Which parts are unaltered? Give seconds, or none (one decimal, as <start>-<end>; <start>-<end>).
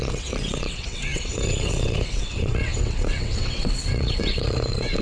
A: none